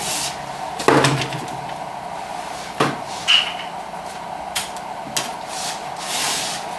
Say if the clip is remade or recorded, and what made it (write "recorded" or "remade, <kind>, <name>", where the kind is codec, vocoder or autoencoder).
recorded